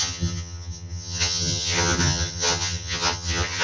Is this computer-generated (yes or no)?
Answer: yes